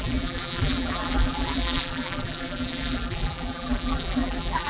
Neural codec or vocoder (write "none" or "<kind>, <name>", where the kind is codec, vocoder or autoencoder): vocoder, BigVGAN v2